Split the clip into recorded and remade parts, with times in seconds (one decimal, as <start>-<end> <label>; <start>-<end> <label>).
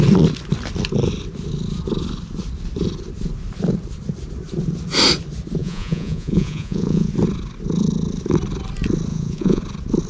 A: 0.0-5.6 recorded; 5.6-7.1 remade; 7.1-9.1 recorded; 9.1-9.6 remade; 9.6-10.1 recorded